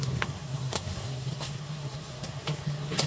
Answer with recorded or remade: remade